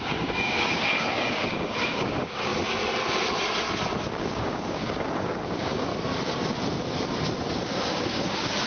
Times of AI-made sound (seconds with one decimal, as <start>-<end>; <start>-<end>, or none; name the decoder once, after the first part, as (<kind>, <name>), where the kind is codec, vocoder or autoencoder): 0.0-2.5 (codec, DAC); 4.0-5.9; 7.5-8.7

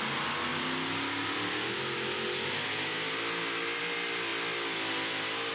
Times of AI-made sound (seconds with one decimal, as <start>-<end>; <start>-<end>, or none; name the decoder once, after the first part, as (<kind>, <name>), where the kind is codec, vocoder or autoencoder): none

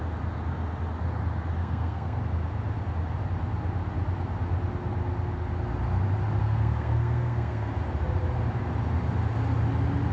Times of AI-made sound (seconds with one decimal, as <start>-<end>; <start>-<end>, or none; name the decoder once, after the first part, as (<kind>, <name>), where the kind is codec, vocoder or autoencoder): 1.6-2.2 (codec, SNAC); 6.4-7.7

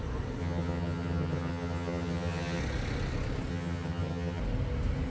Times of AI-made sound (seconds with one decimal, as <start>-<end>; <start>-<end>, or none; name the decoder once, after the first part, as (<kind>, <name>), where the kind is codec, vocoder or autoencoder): 0.4-2.6 (vocoder, HiFi-GAN); 3.5-4.4

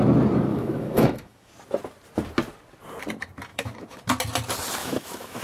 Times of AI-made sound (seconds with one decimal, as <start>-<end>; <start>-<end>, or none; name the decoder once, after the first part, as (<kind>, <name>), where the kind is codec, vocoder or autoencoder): 0.5-1.5 (autoencoder, DAC-VAE); 3.5-4.0; 4.8-5.4

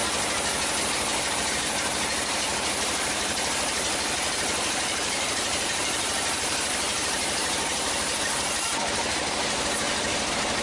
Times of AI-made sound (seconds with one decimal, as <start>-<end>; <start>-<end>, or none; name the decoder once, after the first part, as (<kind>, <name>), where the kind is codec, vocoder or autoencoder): 1.3-10.6 (vocoder, BigVGAN v2)

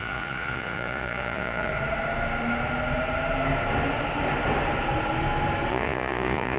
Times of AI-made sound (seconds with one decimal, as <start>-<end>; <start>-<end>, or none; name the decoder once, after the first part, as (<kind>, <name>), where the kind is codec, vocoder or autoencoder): 0.0-1.7 (vocoder, Vocos); 5.7-6.6